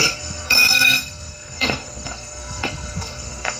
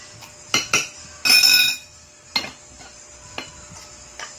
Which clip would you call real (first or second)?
second